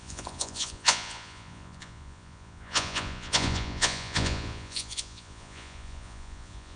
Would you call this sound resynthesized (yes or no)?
yes